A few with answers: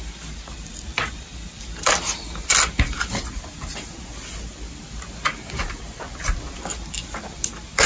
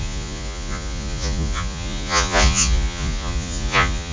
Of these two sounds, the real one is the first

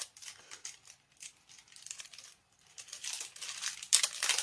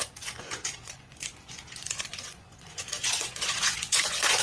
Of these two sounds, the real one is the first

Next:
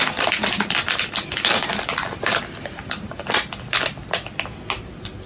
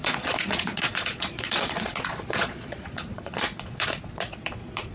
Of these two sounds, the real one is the first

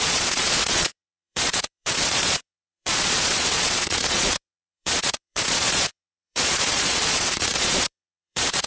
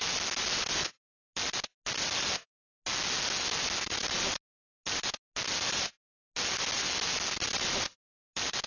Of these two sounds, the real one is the second